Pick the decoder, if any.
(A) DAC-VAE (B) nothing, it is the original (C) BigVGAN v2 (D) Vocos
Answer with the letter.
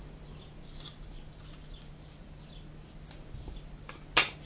B